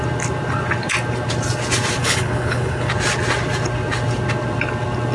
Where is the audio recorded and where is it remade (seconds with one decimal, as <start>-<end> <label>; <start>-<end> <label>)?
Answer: 0.0-2.0 recorded; 2.0-2.9 remade; 2.9-5.1 recorded